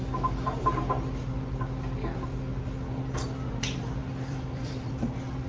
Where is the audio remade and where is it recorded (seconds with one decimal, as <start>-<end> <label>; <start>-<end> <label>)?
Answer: 0.0-4.0 recorded; 4.0-4.9 remade; 4.9-5.5 recorded

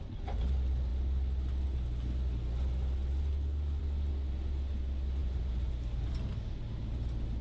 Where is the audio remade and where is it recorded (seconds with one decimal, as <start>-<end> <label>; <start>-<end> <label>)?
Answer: 0.0-5.2 recorded; 5.2-6.1 remade; 6.1-7.4 recorded

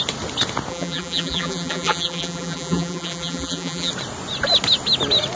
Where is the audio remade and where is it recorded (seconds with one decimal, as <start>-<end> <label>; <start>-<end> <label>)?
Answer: 0.0-0.7 recorded; 0.7-3.9 remade; 3.9-5.4 recorded

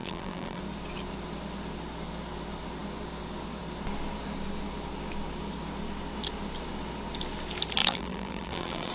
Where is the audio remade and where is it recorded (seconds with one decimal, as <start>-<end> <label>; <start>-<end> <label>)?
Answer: 0.0-0.6 remade; 0.6-7.8 recorded; 7.8-8.9 remade

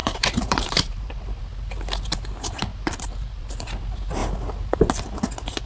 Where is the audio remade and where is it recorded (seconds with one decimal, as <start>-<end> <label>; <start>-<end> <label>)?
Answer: 0.0-1.4 remade; 1.4-2.7 recorded; 2.7-3.5 remade; 3.5-5.7 recorded

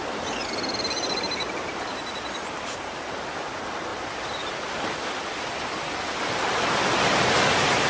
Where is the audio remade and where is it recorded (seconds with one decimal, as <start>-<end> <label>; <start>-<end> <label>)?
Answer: 0.0-0.4 recorded; 0.4-2.6 remade; 2.6-7.9 recorded

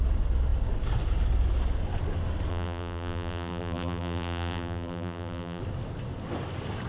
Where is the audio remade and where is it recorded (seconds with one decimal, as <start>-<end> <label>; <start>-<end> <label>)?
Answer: 0.0-2.5 recorded; 2.5-5.6 remade; 5.6-6.9 recorded

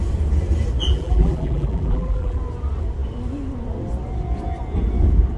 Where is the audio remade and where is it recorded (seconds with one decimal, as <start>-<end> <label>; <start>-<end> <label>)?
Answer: 0.0-0.8 recorded; 0.8-2.4 remade; 2.4-5.4 recorded